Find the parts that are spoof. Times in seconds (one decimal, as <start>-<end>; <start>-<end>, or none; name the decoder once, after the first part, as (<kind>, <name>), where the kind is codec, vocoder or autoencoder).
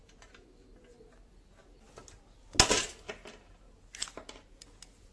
none